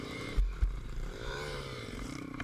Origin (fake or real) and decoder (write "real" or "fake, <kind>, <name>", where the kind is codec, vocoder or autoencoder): fake, vocoder, BigVGAN v2